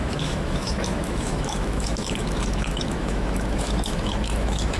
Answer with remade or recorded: remade